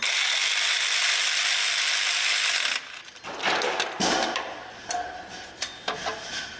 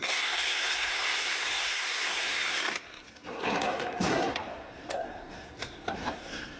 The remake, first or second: second